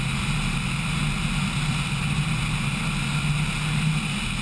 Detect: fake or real real